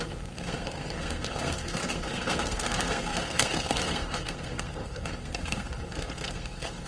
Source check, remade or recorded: remade